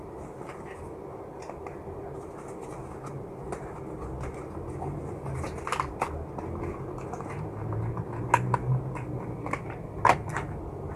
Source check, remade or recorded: recorded